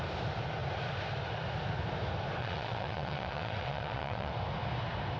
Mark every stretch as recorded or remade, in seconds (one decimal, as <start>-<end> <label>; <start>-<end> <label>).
0.0-2.4 recorded; 2.4-4.3 remade; 4.3-5.2 recorded